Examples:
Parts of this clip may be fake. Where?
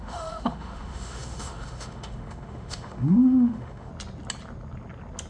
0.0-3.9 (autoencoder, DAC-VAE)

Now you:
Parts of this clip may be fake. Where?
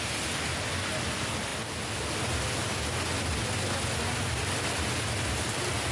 none